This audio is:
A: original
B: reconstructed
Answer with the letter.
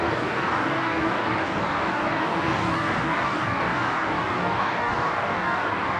B